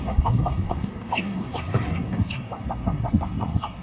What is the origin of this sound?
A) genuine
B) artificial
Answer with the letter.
B